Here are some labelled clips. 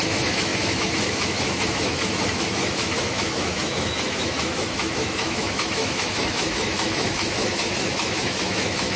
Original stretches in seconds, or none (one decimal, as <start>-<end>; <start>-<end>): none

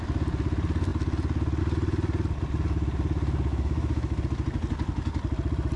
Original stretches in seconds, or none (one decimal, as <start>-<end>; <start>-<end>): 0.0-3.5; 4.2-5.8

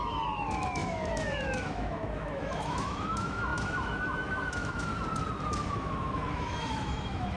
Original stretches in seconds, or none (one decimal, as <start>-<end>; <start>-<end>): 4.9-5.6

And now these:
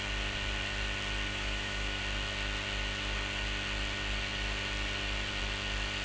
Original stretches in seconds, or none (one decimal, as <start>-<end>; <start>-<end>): 0.0-1.3; 2.0-6.0

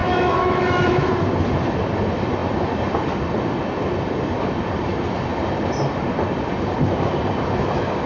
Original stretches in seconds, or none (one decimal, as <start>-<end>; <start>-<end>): 1.1-8.1